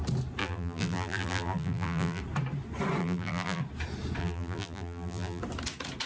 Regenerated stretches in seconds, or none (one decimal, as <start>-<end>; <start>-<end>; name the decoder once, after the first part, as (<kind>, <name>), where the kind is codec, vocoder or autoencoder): 0.4-2.2 (vocoder, BigVGAN v2); 3.0-3.6; 4.2-5.4